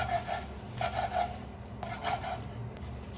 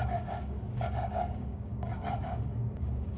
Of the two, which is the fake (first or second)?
second